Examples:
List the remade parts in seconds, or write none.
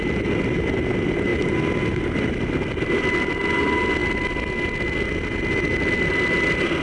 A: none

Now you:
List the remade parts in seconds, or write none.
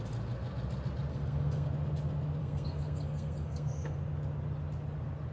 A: 1.1-1.7 (codec, SNAC); 2.4-4.0